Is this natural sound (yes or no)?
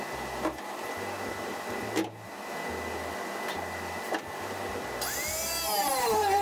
yes